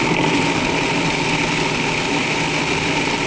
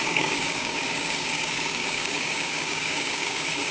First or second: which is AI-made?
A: second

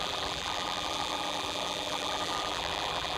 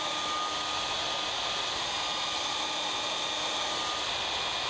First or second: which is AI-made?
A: first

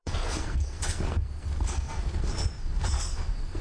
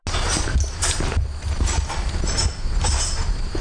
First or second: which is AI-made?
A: first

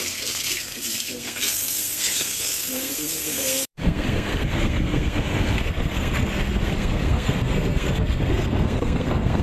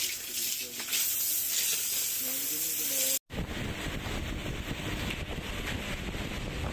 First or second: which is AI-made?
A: first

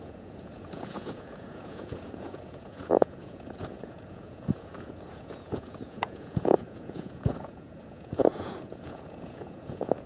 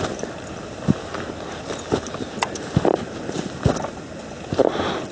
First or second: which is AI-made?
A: first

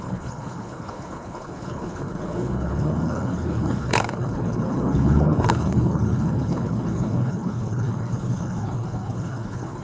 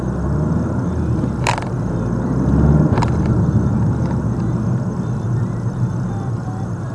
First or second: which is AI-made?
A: first